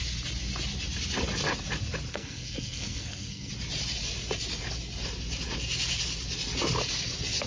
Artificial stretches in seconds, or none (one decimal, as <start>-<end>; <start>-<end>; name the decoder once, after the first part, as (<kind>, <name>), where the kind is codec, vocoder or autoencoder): 2.1-3.5 (codec, SNAC)